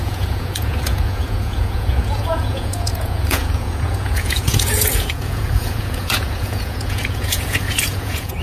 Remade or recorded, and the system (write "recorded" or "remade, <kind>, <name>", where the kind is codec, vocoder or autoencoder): remade, vocoder, Vocos